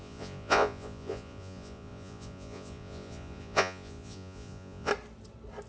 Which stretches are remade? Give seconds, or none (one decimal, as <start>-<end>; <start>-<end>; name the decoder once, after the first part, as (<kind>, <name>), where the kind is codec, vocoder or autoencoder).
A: 0.0-4.9 (vocoder, Vocos)